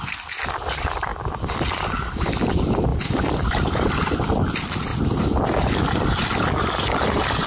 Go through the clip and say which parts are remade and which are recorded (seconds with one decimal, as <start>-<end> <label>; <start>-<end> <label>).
0.0-1.1 remade; 1.1-2.3 recorded; 2.3-4.9 remade; 4.9-5.9 recorded; 5.9-7.5 remade